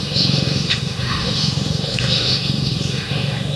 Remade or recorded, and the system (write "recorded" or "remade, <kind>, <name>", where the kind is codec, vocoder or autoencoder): remade, autoencoder, DAC-VAE